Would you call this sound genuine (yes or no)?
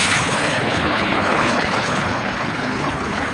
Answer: no